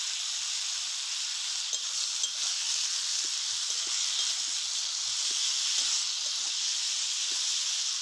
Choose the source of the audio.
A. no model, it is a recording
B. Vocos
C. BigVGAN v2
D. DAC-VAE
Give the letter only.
A